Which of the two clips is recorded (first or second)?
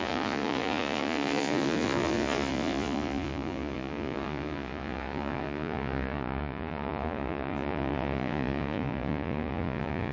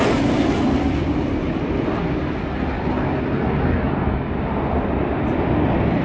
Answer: second